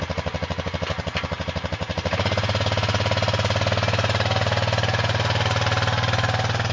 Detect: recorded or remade recorded